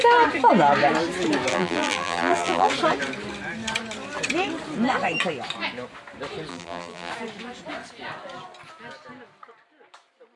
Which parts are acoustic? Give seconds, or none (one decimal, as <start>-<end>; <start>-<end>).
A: 0.0-1.5; 2.7-6.5; 7.1-10.4